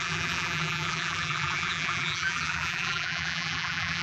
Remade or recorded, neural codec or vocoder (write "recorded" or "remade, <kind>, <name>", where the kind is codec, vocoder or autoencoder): remade, vocoder, BigVGAN v2